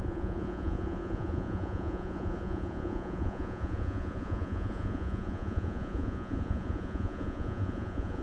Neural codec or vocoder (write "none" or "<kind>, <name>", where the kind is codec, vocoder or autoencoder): vocoder, Vocos